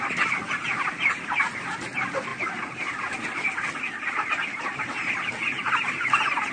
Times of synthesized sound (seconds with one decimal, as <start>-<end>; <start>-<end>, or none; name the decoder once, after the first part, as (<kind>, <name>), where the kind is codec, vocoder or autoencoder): none

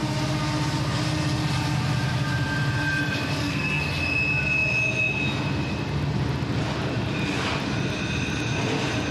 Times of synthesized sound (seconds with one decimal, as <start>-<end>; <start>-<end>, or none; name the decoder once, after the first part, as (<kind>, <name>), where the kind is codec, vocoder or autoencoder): 3.4-3.9 (codec, SNAC)

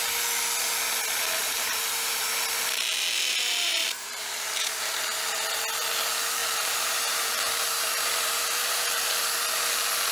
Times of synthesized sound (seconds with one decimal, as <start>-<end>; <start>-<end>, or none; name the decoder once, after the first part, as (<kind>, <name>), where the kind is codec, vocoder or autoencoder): 1.4-2.3 (vocoder, BigVGAN v2); 3.7-5.0; 6.4-9.1

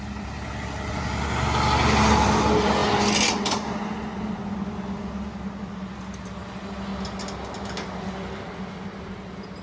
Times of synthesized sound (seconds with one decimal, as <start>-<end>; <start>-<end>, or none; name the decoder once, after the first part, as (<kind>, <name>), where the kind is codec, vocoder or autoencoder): none